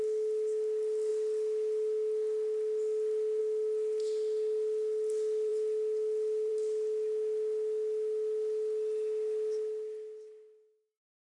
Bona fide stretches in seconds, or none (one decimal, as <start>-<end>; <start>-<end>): 0.0-11.3

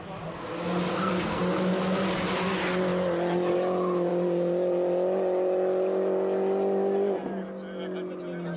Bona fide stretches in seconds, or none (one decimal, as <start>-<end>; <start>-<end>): 0.0-0.9; 1.4-8.6